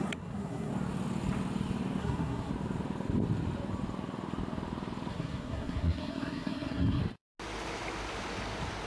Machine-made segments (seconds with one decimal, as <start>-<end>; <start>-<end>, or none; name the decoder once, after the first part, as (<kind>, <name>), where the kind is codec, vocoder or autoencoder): 0.0-0.7 (codec, SNAC); 2.0-2.5; 5.1-7.0